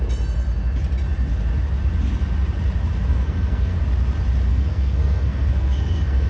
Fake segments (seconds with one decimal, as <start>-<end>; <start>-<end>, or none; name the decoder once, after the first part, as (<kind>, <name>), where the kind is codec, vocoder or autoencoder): 3.1-3.8 (codec, SNAC); 4.5-6.3